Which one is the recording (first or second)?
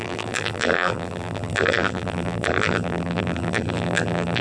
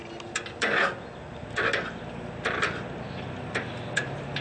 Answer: second